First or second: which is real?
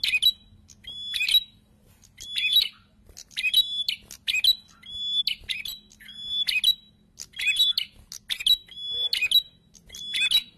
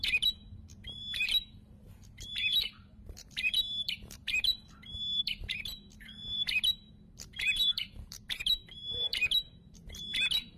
first